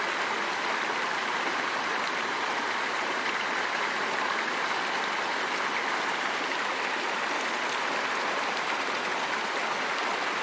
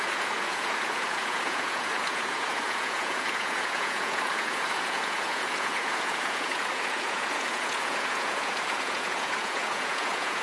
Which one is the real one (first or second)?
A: first